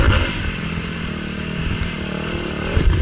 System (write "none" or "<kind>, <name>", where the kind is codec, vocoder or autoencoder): vocoder, BigVGAN v2